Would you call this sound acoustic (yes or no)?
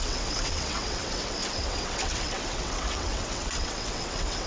no